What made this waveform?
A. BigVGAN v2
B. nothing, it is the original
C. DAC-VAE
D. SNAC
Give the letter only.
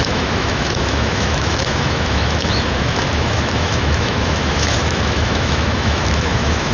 C